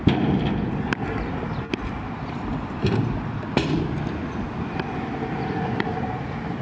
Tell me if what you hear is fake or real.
real